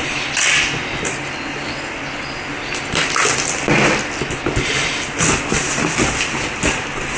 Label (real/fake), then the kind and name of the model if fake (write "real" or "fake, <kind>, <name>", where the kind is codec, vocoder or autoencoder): real